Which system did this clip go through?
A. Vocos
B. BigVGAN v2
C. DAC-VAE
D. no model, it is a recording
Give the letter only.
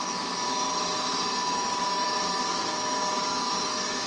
C